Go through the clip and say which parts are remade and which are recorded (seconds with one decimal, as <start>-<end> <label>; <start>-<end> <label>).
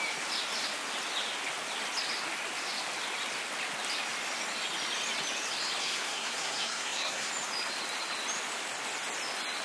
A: 0.0-5.8 recorded; 5.8-7.3 remade; 7.3-9.6 recorded